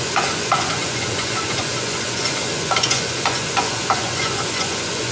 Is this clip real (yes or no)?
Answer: no